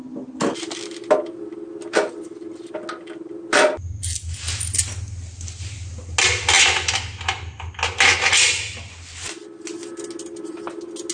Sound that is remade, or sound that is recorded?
recorded